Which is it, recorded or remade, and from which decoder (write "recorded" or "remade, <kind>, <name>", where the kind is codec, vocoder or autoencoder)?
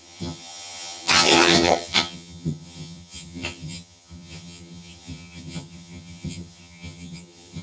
remade, vocoder, HiFi-GAN